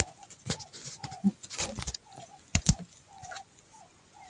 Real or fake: fake